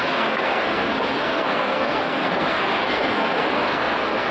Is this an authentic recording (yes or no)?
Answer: no